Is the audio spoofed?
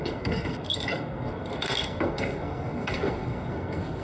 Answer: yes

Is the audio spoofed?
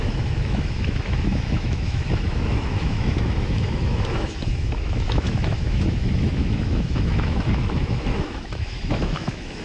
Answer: yes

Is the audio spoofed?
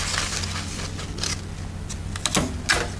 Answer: no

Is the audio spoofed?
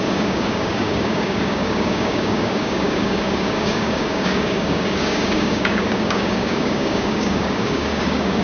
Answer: yes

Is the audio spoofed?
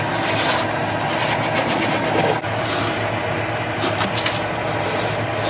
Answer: no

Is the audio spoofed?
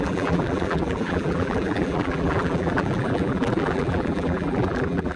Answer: yes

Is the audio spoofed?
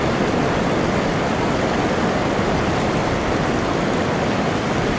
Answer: no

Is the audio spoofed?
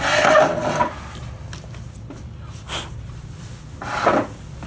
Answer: no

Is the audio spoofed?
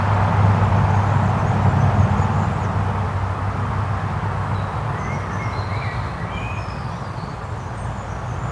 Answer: no